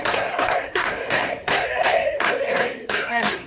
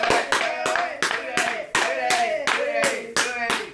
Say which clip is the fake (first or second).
first